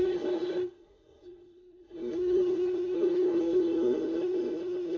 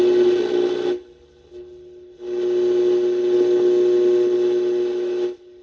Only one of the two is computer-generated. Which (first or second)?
first